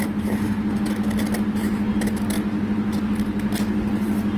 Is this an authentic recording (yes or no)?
yes